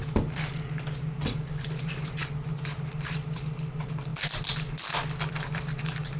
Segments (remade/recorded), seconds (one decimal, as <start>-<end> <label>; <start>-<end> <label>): 0.0-4.1 remade; 4.1-5.3 recorded; 5.3-6.2 remade